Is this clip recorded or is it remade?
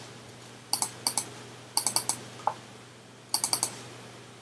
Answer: recorded